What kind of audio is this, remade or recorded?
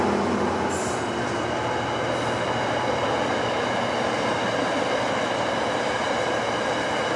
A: recorded